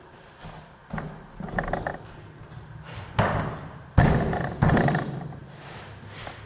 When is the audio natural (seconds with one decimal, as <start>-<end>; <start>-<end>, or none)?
1.9-2.5; 5.4-6.0